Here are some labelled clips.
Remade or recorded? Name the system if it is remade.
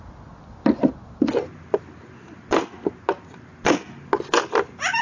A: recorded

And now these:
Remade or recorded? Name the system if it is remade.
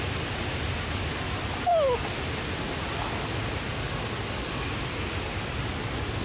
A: recorded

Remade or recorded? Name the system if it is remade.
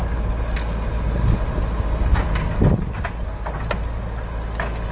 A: recorded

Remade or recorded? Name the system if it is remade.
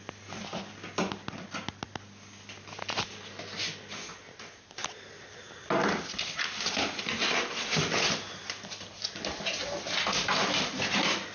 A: recorded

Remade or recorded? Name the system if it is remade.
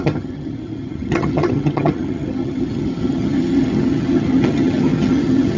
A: remade, vocoder, HiFi-GAN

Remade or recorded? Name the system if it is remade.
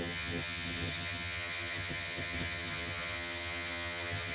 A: remade, vocoder, HiFi-GAN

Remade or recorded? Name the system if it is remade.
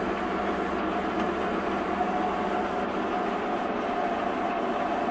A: recorded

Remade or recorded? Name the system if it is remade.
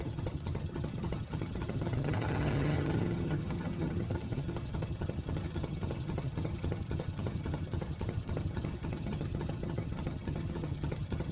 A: remade, vocoder, HiFi-GAN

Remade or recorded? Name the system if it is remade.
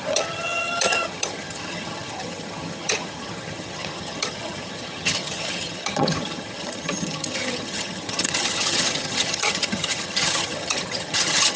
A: remade, vocoder, HiFi-GAN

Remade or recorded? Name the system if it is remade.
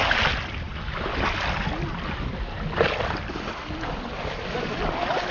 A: recorded